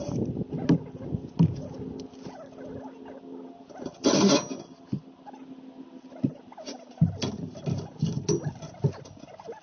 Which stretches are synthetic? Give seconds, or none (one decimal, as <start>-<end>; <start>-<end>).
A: none